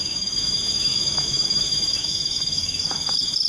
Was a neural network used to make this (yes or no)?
yes